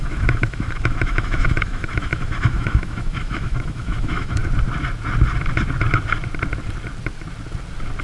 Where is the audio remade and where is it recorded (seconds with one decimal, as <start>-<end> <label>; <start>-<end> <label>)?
0.0-4.4 remade; 4.4-8.0 recorded